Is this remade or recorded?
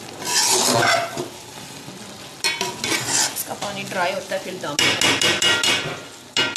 recorded